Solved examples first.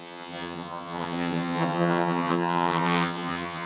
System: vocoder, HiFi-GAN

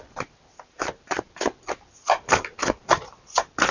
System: none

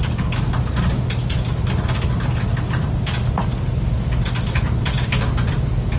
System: none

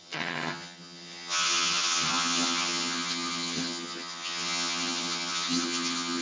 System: vocoder, HiFi-GAN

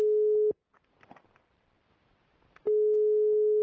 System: none